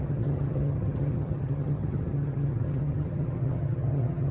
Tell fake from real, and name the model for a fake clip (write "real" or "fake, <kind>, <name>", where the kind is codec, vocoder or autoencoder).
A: fake, vocoder, HiFi-GAN